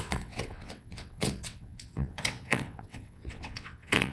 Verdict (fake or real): fake